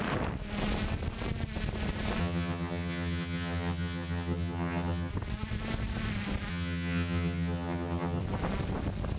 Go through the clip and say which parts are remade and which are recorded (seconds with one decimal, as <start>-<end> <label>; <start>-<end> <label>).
0.0-2.2 recorded; 2.2-5.1 remade; 5.1-6.5 recorded; 6.5-8.2 remade; 8.2-9.2 recorded